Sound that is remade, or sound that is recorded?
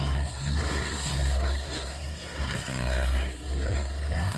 remade